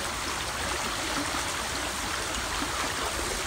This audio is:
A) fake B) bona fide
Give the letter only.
B